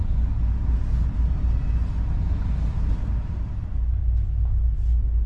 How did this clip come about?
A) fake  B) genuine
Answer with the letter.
B